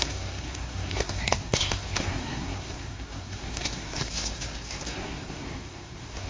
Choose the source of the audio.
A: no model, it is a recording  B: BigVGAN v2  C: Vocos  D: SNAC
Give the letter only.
D